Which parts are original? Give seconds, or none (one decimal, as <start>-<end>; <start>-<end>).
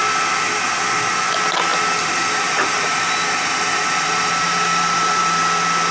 0.0-1.7; 5.2-5.9